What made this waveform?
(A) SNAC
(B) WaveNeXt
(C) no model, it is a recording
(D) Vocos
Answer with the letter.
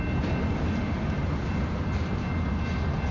C